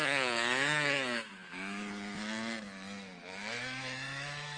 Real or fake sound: fake